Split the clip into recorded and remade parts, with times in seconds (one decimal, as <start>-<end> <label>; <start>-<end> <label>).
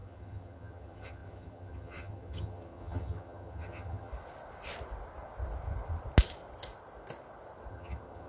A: 0.0-4.1 remade; 4.1-7.7 recorded; 7.7-8.3 remade